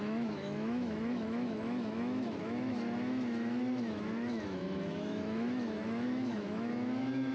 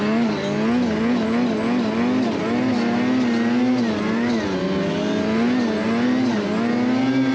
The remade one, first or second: first